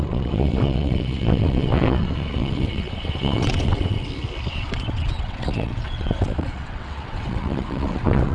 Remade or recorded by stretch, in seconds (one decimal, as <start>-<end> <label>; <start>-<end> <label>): 0.0-4.0 remade; 4.0-4.5 recorded; 4.5-8.3 remade